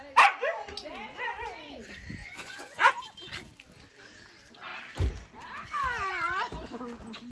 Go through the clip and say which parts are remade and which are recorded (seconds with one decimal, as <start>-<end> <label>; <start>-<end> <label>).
0.0-2.2 recorded; 2.2-2.9 remade; 2.9-7.3 recorded